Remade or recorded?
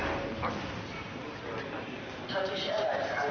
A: recorded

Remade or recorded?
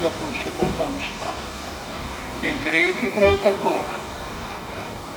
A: remade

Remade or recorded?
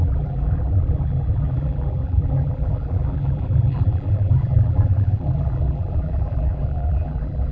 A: remade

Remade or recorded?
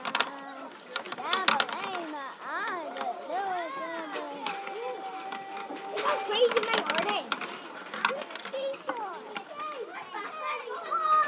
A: recorded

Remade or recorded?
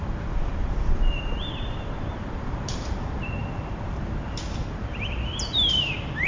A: remade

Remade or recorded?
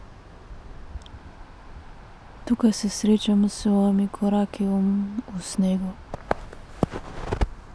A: recorded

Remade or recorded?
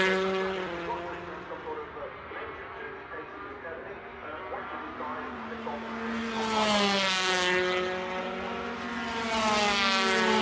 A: recorded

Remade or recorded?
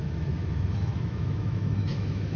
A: remade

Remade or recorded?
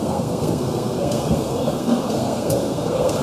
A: remade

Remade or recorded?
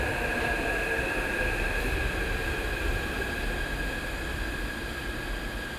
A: recorded